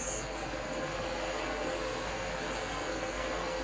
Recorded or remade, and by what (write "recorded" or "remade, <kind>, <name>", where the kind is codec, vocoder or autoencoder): remade, codec, SNAC